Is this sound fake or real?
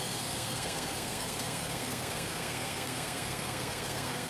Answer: fake